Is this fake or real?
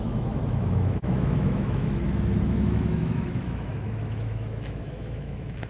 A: fake